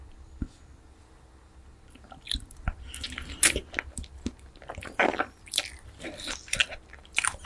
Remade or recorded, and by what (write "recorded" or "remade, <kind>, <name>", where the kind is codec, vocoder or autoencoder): recorded